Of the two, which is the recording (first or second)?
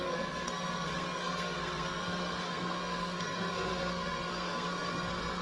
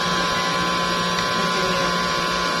second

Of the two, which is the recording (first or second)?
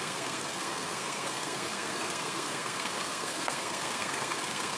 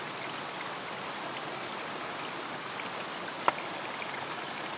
second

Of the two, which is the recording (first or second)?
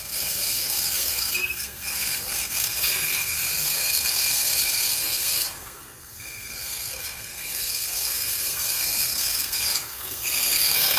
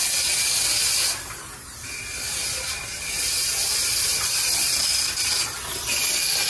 second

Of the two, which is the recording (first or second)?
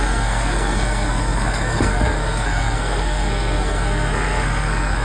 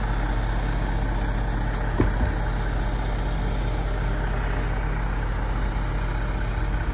second